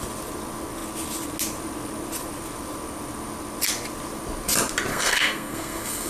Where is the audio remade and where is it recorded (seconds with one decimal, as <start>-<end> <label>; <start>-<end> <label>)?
0.0-4.9 recorded; 4.9-6.1 remade